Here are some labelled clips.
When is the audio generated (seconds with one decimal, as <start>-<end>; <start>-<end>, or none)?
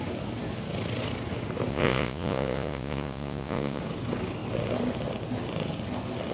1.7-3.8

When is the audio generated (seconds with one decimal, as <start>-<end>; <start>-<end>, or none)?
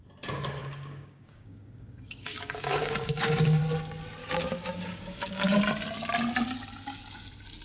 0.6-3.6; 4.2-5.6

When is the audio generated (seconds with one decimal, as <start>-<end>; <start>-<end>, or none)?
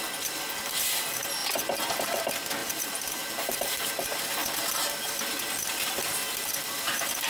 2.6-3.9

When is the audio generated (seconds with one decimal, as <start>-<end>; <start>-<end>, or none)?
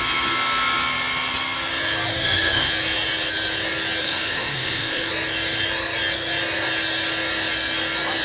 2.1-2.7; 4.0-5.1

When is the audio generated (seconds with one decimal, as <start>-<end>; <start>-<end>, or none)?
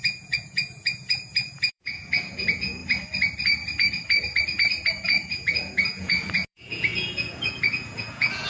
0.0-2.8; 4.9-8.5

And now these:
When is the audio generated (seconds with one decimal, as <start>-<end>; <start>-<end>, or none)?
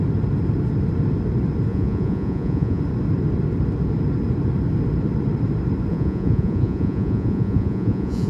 1.7-2.8; 5.9-8.3